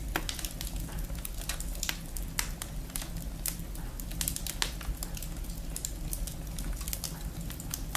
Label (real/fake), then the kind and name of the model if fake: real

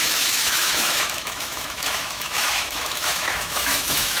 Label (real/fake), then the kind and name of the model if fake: fake, autoencoder, DAC-VAE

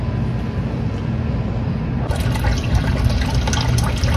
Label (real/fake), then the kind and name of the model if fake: real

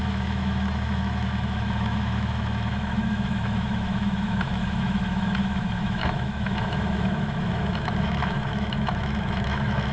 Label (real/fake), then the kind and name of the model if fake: fake, autoencoder, DAC-VAE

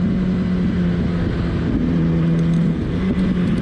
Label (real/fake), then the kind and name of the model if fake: real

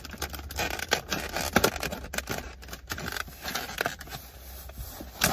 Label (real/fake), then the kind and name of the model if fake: real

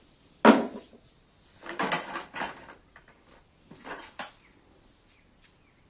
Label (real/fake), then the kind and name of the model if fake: real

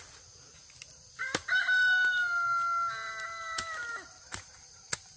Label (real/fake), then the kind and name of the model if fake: real